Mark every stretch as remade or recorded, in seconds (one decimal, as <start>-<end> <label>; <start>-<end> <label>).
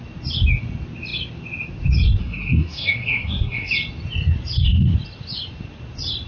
0.0-2.2 recorded; 2.2-3.7 remade; 3.7-6.3 recorded